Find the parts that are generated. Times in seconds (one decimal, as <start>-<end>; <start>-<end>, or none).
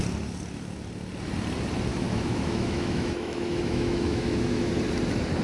1.9-4.7